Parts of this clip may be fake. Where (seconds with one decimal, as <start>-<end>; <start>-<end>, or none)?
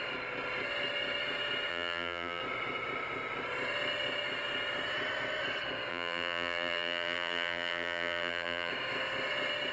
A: 1.7-2.4; 5.9-8.7